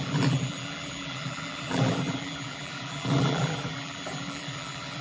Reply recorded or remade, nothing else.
remade